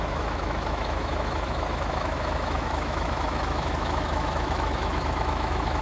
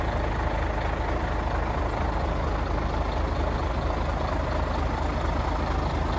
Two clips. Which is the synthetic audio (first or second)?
first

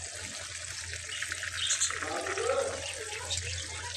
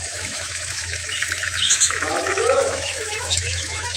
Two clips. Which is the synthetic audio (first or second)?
second